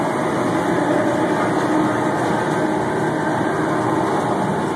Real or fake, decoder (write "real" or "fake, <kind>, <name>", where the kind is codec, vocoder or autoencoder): real